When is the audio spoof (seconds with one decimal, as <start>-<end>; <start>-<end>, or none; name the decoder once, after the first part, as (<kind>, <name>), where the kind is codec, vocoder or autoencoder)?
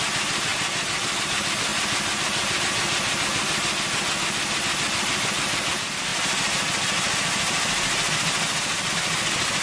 none